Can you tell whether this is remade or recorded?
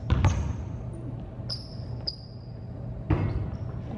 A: recorded